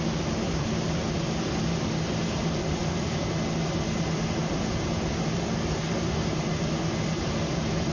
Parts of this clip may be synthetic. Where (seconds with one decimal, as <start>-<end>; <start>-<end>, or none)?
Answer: none